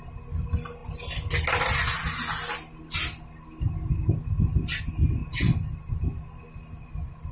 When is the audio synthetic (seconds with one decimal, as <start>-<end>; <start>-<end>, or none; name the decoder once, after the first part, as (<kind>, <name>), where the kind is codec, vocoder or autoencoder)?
none